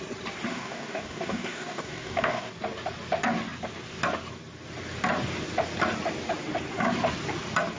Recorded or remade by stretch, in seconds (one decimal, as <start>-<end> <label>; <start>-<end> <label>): 0.0-0.5 recorded; 0.5-2.5 remade; 2.5-7.8 recorded